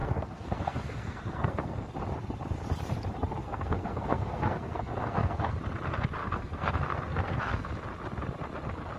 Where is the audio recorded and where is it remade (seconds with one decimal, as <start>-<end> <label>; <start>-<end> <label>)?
0.0-1.9 remade; 1.9-3.4 recorded; 3.4-5.6 remade; 5.6-6.2 recorded; 6.2-7.7 remade; 7.7-9.0 recorded